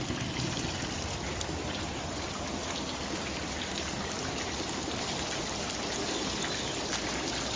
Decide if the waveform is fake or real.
real